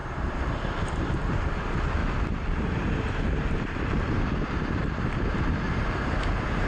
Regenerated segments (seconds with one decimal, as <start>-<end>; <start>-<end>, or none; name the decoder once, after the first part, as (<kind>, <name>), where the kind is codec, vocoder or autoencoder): 0.0-1.0 (vocoder, BigVGAN v2); 2.0-6.0